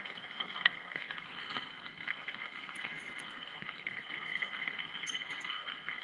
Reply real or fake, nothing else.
fake